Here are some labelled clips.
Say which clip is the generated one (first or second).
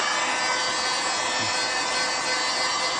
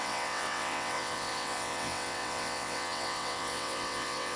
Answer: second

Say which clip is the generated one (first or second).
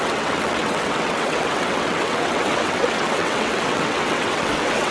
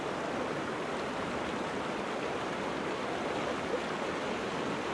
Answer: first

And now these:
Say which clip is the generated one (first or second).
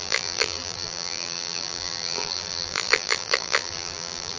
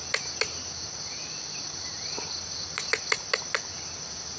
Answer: first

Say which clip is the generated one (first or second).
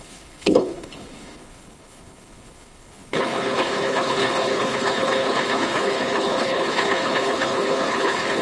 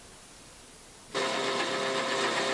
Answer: first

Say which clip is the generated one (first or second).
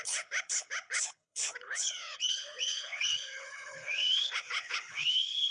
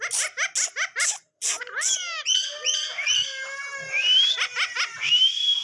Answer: first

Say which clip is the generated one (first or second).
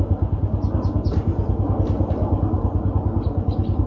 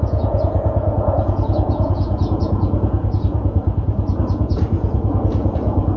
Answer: second